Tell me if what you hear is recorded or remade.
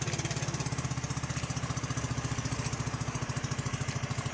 recorded